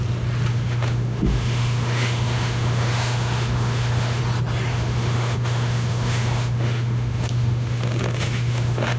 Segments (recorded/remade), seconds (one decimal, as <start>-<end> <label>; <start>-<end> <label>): 0.0-0.5 recorded; 0.5-4.2 remade; 4.2-4.7 recorded; 4.7-9.0 remade